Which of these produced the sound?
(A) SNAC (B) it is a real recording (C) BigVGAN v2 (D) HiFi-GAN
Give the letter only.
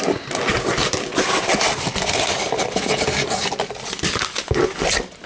B